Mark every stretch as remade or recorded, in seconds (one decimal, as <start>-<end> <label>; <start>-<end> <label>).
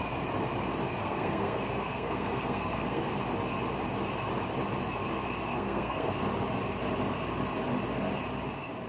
0.0-1.0 recorded; 1.0-3.2 remade; 3.2-5.5 recorded; 5.5-6.1 remade; 6.1-8.9 recorded